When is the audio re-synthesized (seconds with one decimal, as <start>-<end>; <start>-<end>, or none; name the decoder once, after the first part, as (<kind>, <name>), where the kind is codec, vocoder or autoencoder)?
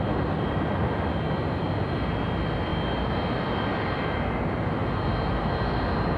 none